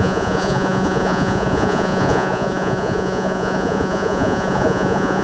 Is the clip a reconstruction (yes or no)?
yes